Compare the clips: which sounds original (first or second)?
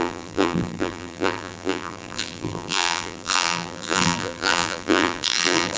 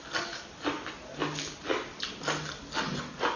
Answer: second